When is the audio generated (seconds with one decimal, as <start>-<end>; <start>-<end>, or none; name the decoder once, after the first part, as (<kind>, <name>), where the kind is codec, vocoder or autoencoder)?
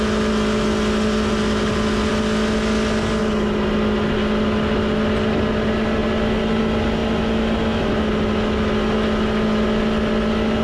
none